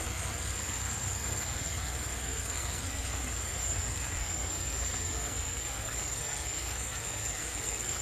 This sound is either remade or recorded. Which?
remade